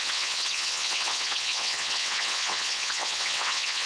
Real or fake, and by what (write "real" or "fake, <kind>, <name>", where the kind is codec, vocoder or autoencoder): fake, vocoder, WaveNeXt